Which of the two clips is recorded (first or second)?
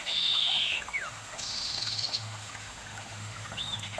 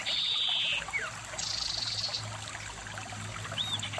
second